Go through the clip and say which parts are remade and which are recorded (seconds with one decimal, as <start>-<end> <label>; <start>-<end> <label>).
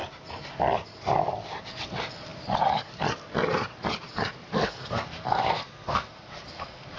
0.0-4.5 recorded; 4.5-7.0 remade